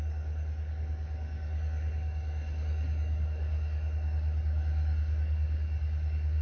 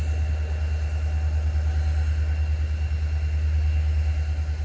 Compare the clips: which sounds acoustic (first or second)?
second